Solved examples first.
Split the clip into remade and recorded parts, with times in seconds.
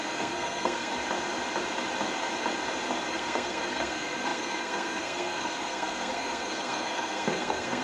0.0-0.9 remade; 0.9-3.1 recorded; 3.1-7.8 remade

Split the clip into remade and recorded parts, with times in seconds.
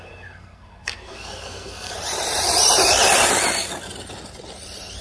0.0-1.9 remade; 1.9-5.0 recorded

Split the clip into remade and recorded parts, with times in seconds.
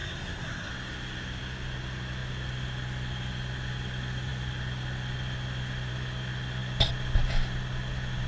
0.0-0.7 remade; 0.7-8.3 recorded